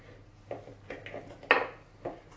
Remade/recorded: recorded